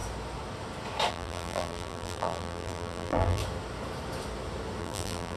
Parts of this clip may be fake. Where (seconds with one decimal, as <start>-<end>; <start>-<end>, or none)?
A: 1.1-3.4; 4.8-5.4